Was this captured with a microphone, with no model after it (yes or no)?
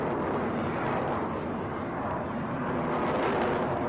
no